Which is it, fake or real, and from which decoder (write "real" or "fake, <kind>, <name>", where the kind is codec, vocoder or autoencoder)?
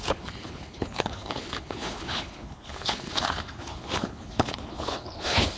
fake, codec, HILCodec